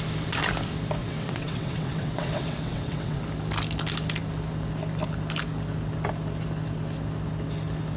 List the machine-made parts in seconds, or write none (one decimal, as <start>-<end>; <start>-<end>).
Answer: 1.0-3.2